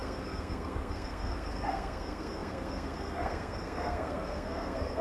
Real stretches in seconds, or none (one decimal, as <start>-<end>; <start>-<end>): none